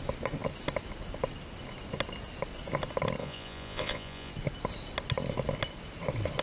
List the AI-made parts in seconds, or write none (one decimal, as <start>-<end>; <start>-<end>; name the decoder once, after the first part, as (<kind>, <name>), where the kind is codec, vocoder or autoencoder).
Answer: 3.2-4.3 (vocoder, Vocos)